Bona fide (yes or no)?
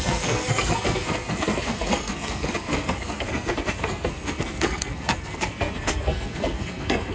no